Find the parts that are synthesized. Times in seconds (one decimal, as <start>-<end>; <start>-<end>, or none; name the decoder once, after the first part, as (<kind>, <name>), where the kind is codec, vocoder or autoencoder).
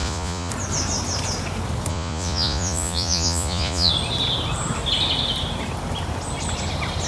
0.0-0.5 (vocoder, Vocos); 1.9-3.9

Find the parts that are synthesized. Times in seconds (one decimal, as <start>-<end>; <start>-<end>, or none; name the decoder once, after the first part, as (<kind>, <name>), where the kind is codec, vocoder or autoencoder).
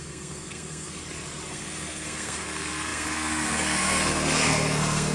0.0-1.0 (codec, SNAC); 1.5-5.1